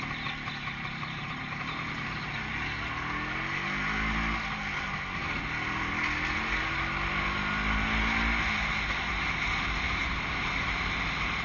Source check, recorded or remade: recorded